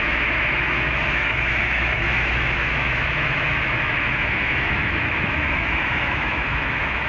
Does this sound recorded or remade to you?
remade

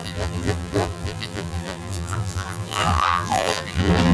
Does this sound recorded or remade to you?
remade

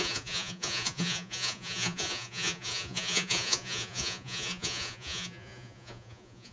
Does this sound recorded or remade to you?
remade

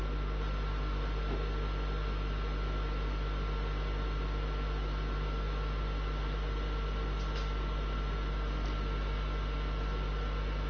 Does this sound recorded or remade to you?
recorded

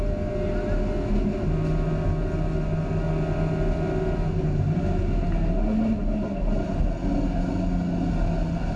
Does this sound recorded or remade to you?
recorded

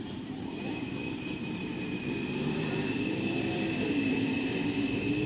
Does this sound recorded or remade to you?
remade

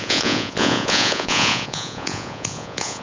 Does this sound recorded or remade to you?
remade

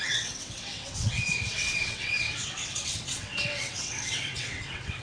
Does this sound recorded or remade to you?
remade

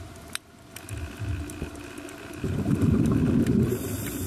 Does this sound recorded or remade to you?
recorded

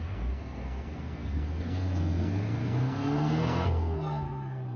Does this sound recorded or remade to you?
remade